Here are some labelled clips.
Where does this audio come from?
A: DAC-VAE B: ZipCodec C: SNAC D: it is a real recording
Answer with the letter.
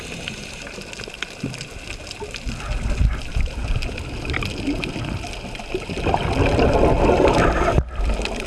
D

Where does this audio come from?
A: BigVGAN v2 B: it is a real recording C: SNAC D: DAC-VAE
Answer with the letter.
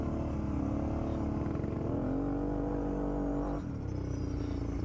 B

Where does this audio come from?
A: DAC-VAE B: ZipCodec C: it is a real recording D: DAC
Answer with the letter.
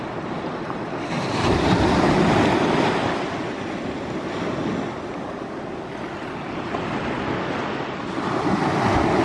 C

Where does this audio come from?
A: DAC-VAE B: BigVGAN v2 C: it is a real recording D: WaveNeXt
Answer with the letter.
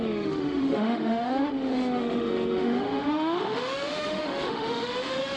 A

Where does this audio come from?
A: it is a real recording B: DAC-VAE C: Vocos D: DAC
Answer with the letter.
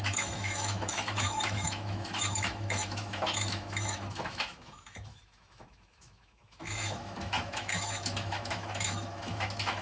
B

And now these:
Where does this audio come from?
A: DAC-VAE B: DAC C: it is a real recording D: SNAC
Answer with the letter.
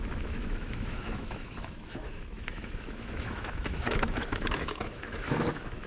A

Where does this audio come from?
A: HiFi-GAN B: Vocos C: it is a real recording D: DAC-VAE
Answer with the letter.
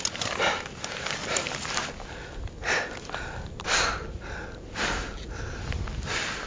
C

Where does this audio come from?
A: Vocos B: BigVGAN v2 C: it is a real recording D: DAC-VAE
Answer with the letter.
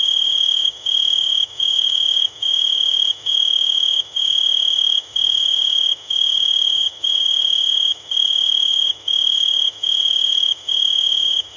D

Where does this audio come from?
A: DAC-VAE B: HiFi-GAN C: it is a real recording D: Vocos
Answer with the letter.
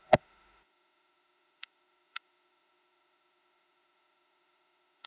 A